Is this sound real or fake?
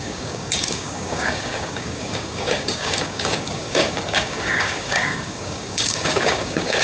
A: fake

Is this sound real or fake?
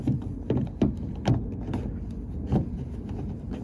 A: real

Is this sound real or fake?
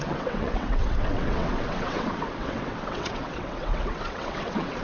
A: fake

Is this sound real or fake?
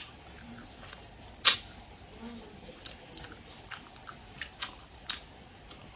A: real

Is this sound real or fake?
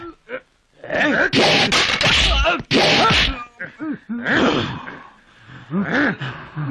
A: real